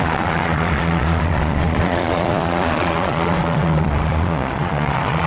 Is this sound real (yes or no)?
no